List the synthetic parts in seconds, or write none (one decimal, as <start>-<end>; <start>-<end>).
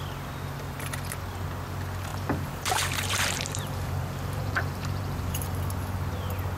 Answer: 2.1-5.6